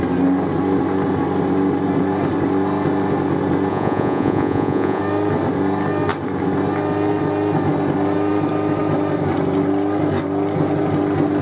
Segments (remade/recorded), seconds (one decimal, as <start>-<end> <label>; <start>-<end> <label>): 0.0-3.7 recorded; 3.7-5.0 remade; 5.0-11.4 recorded